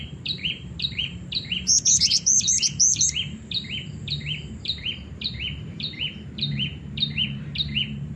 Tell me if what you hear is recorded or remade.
remade